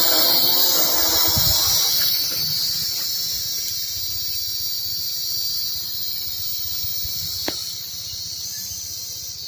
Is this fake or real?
real